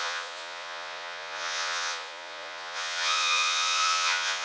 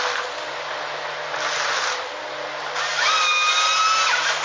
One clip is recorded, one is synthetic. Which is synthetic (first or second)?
first